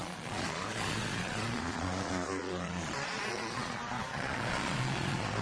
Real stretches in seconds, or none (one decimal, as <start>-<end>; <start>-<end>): none